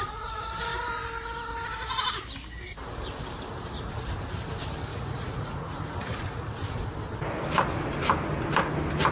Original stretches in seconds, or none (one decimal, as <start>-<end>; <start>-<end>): 0.0-4.9; 6.8-9.1